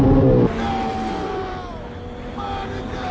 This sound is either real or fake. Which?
real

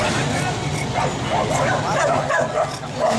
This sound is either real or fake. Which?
real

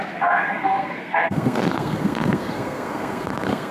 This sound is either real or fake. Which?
fake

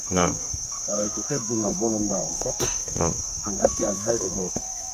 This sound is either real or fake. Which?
fake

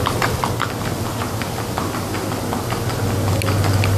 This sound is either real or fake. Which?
real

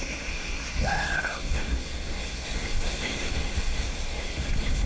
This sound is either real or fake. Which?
fake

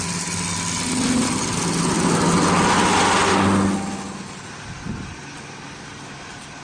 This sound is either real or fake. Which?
real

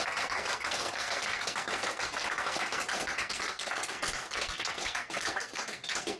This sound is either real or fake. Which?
fake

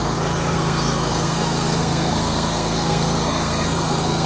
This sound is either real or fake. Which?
fake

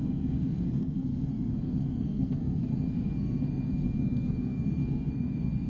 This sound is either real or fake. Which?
fake